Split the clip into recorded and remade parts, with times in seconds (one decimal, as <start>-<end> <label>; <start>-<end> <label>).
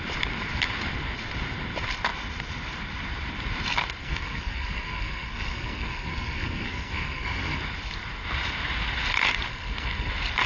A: 0.0-4.0 recorded; 4.0-7.6 remade; 7.6-9.5 recorded; 9.5-10.1 remade; 10.1-10.5 recorded